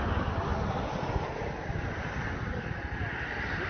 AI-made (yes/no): no